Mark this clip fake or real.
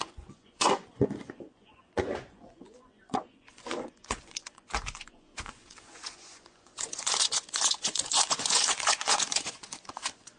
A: fake